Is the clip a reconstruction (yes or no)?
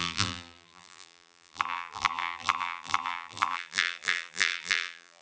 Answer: yes